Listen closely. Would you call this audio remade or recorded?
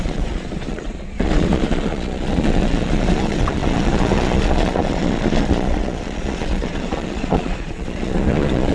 remade